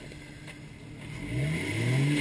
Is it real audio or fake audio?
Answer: real